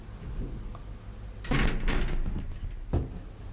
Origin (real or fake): real